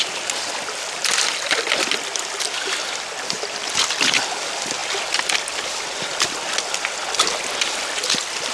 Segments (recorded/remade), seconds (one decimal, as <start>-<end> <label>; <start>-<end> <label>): 0.0-8.5 recorded